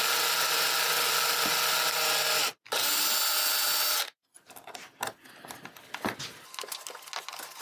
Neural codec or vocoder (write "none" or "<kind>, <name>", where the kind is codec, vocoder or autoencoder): none